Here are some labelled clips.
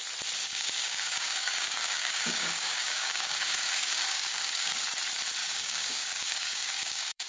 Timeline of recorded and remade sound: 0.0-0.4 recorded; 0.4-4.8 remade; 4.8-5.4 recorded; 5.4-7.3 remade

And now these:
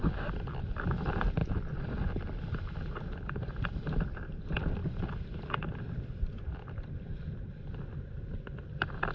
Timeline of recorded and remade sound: 0.0-9.1 recorded

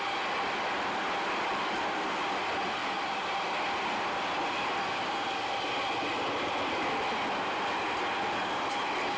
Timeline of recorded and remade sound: 0.0-9.2 recorded

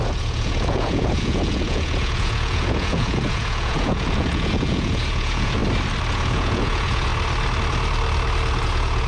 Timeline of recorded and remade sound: 0.0-5.6 remade; 5.6-6.1 recorded; 6.1-7.1 remade; 7.1-8.6 recorded; 8.6-9.1 remade

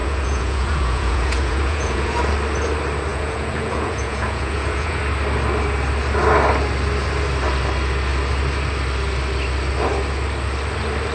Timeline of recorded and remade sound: 0.0-2.2 remade; 2.2-3.1 recorded; 3.1-5.0 remade; 5.0-11.1 recorded

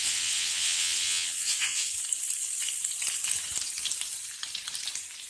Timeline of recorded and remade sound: 0.0-1.9 remade; 1.9-5.3 recorded

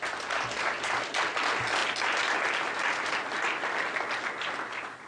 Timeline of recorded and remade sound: 0.0-5.1 recorded

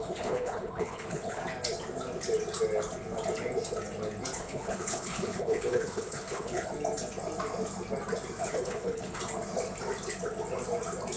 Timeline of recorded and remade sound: 0.0-1.4 remade; 1.4-4.4 recorded; 4.4-6.7 remade; 6.7-8.4 recorded; 8.4-9.2 remade; 9.2-11.2 recorded